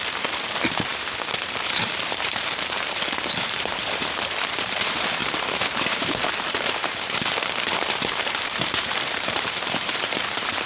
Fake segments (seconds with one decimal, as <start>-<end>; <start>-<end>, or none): 0.0-10.7